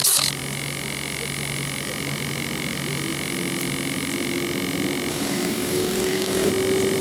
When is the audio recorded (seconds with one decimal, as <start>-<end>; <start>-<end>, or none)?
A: 0.0-5.1; 6.5-7.0